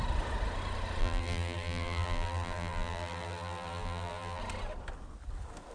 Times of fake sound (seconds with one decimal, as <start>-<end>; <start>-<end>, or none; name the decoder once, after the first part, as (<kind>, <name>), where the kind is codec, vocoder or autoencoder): 1.0-4.4 (vocoder, BigVGAN v2)